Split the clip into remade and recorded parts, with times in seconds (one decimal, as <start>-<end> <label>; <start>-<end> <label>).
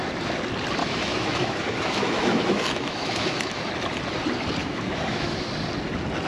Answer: 0.0-0.8 recorded; 0.8-3.6 remade; 3.6-4.6 recorded; 4.6-5.4 remade; 5.4-6.3 recorded